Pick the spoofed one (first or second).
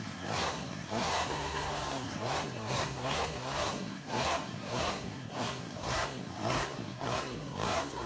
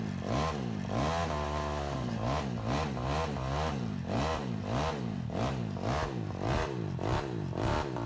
first